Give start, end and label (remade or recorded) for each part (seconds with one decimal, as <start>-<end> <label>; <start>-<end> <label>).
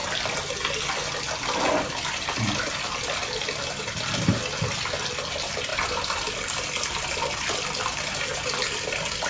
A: 0.0-7.9 recorded; 7.9-8.5 remade; 8.5-9.3 recorded